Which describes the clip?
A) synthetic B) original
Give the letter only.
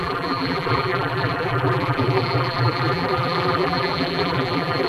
A